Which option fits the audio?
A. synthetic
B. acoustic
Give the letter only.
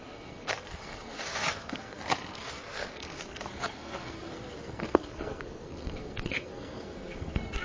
A